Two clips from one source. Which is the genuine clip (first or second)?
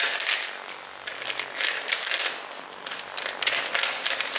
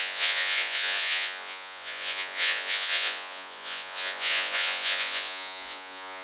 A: first